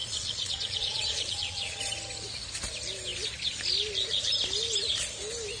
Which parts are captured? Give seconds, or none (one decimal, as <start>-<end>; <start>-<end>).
1.8-5.6